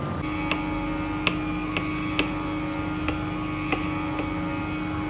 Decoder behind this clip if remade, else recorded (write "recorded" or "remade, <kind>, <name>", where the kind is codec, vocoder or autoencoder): recorded